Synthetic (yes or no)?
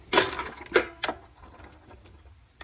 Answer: no